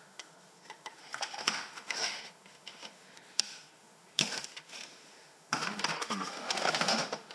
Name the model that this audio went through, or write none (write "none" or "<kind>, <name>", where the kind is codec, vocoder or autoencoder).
autoencoder, DAC-VAE